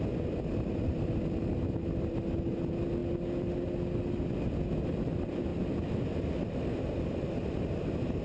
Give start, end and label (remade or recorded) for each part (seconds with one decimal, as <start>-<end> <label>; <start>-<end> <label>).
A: 0.0-8.2 recorded